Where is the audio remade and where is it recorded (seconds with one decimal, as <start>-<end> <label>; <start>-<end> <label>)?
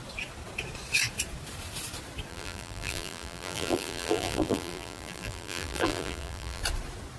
0.0-2.3 recorded; 2.3-6.6 remade; 6.6-7.2 recorded